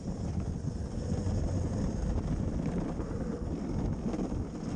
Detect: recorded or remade recorded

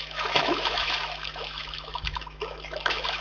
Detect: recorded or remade remade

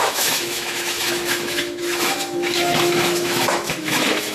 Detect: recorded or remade remade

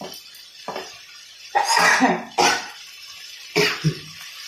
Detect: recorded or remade recorded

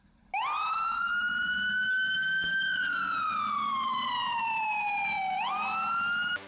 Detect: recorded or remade recorded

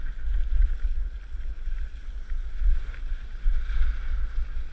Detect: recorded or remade recorded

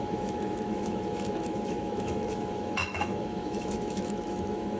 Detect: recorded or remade remade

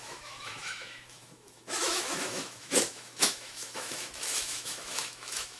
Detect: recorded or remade remade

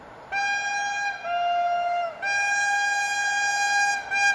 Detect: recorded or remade recorded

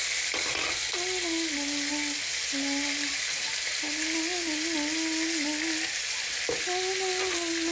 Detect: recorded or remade recorded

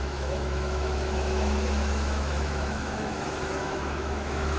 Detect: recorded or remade remade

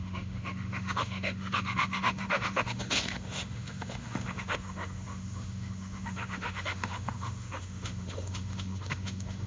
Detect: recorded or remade remade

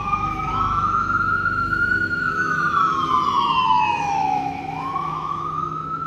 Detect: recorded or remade remade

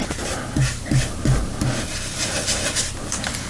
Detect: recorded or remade recorded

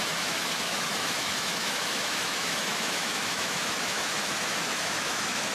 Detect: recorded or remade remade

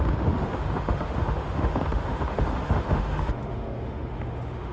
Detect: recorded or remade remade